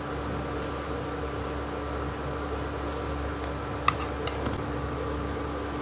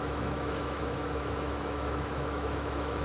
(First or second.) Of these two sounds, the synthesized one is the second